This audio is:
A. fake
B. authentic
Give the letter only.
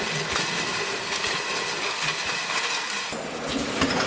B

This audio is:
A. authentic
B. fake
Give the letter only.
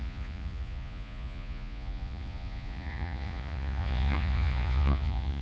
B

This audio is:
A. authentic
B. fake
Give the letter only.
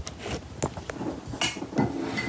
A